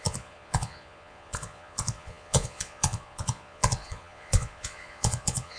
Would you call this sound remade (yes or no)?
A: yes